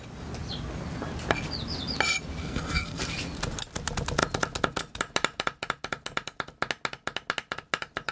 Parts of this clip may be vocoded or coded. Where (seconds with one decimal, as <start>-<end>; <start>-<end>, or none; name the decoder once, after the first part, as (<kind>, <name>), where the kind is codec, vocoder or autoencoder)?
2.4-3.0 (codec, SNAC)